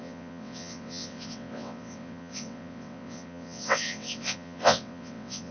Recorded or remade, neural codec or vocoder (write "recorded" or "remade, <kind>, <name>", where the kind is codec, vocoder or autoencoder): remade, vocoder, WaveNeXt